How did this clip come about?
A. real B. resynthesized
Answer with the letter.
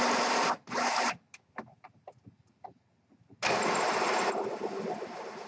A